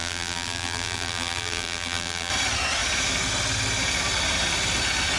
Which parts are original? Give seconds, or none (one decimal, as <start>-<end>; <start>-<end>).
2.3-5.2